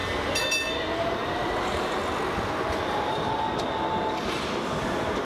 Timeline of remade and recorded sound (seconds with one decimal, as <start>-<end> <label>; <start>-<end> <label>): 0.0-0.9 recorded; 0.9-2.0 remade; 2.0-5.2 recorded